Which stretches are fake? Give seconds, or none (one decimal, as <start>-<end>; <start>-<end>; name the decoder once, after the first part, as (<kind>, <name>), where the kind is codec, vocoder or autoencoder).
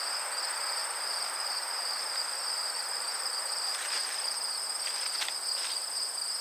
0.8-3.7 (vocoder, BigVGAN v2)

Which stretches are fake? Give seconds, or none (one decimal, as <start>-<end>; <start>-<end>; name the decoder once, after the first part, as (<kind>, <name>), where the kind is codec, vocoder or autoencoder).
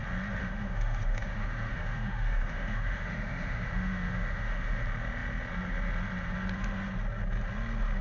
0.4-4.8 (autoencoder, DAC-VAE)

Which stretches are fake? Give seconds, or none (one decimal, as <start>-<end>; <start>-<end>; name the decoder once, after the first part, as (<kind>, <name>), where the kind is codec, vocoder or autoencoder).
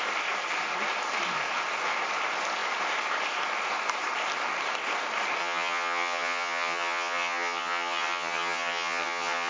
5.4-9.5 (vocoder, HiFi-GAN)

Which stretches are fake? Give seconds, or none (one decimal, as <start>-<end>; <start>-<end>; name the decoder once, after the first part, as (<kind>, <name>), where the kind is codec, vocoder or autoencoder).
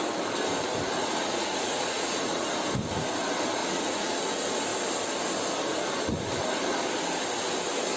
1.0-2.6 (vocoder, Vocos); 3.6-4.2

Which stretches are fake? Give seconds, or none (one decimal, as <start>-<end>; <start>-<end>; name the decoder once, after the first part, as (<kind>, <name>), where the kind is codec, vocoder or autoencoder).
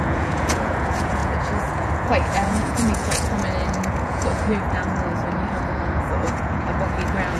0.0-7.4 (vocoder, Vocos)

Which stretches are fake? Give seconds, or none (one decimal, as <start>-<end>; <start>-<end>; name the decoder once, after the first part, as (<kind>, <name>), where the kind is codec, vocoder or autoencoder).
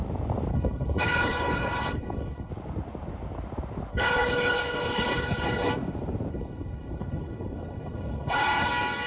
0.5-2.5 (codec, HILCodec); 3.9-5.7; 6.3-8.7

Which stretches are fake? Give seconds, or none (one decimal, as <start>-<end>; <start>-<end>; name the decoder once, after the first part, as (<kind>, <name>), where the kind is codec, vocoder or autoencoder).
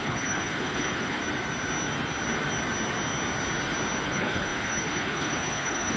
0.0-1.2 (codec, HILCodec); 4.0-6.0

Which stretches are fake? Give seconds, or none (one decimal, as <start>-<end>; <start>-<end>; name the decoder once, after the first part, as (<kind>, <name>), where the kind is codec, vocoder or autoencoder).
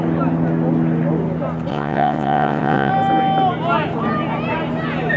1.7-2.9 (vocoder, WaveNeXt)